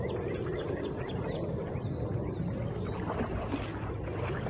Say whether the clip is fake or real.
real